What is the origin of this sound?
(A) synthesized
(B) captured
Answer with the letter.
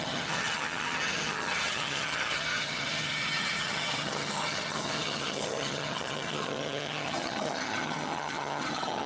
A